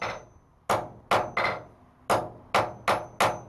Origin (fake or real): real